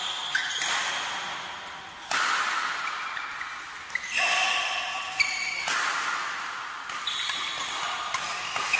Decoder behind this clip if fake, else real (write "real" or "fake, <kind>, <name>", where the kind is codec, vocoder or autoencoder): real